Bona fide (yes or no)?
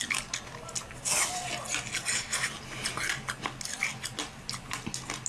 yes